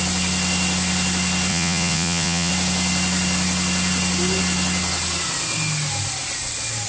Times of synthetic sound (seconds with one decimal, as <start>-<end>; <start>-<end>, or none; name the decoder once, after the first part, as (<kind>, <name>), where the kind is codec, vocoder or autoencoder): 1.5-2.5 (vocoder, Vocos)